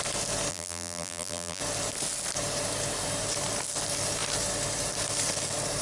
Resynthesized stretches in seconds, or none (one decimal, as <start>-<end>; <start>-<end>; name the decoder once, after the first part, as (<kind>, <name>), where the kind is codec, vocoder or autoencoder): 0.5-1.6 (vocoder, BigVGAN v2)